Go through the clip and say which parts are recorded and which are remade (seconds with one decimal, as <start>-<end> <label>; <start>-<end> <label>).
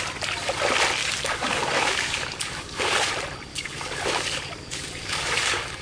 0.0-1.0 recorded; 1.0-3.1 remade; 3.1-3.5 recorded; 3.5-5.8 remade